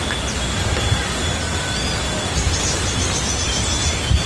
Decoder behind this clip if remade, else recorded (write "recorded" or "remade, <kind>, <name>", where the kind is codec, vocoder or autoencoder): recorded